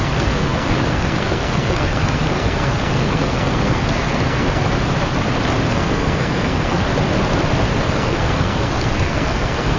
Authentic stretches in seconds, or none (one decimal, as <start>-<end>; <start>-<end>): 4.6-5.7; 6.9-7.9